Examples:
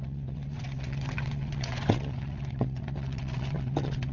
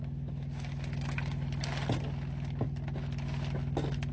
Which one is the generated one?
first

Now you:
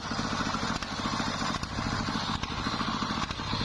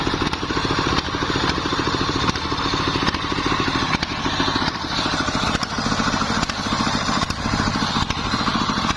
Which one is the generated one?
second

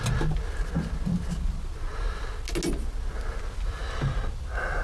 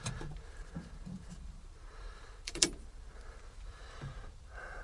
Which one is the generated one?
second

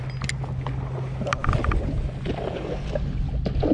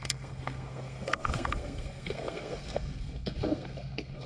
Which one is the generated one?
second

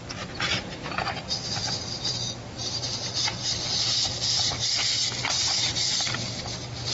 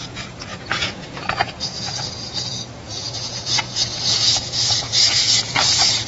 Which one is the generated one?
second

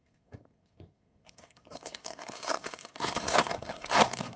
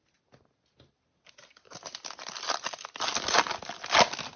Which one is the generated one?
first